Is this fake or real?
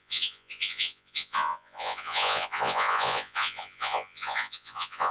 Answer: fake